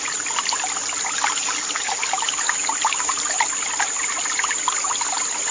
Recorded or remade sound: recorded